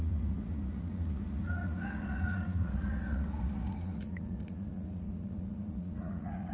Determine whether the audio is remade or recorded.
remade